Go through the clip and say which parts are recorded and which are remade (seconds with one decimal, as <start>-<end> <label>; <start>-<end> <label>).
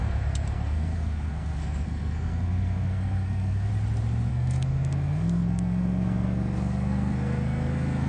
0.0-3.7 remade; 3.7-4.3 recorded; 4.3-8.1 remade